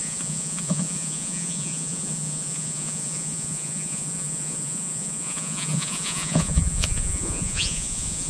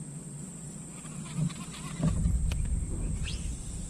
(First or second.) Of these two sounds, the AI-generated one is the first